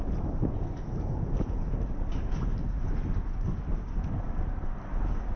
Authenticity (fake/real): real